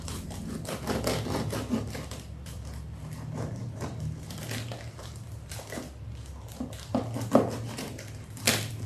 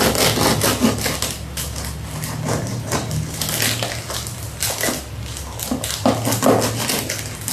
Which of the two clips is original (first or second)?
second